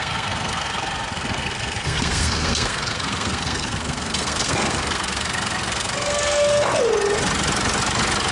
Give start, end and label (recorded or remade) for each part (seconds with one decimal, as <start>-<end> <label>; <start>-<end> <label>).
0.0-6.7 remade; 6.7-8.3 recorded

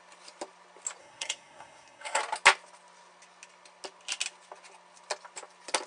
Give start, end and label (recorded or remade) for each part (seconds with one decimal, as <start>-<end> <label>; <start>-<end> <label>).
0.0-1.0 recorded; 1.0-2.2 remade; 2.2-5.9 recorded

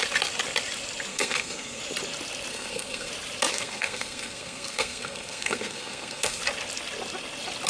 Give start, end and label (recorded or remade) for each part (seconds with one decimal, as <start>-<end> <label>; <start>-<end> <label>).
0.0-1.1 recorded; 1.1-1.8 remade; 1.8-2.5 recorded; 2.5-3.1 remade; 3.1-3.5 recorded; 3.5-6.4 remade; 6.4-7.7 recorded